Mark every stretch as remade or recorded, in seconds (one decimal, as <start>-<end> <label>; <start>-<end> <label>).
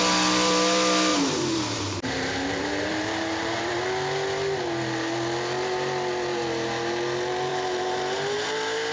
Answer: 0.0-1.1 recorded; 1.1-3.8 remade; 3.8-7.5 recorded; 7.5-8.0 remade; 8.0-8.9 recorded